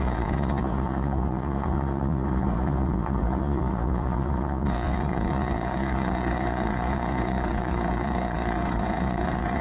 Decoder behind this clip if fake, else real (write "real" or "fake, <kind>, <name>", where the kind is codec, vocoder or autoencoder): fake, vocoder, Vocos